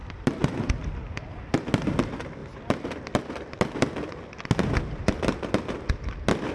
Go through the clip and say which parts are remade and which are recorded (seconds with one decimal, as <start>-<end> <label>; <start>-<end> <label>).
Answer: 0.0-0.9 remade; 0.9-2.4 recorded; 2.4-4.5 remade; 4.5-6.5 recorded

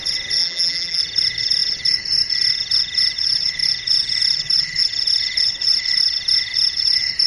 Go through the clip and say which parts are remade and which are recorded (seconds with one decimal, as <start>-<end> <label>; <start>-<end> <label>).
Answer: 0.0-0.4 recorded; 0.4-1.0 remade; 1.0-7.3 recorded